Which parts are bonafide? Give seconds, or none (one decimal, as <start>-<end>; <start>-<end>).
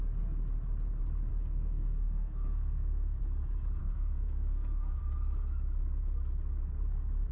0.0-1.3; 3.2-3.8; 5.0-7.3